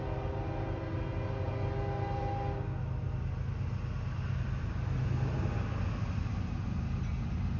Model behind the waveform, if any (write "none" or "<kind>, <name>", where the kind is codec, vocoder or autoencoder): none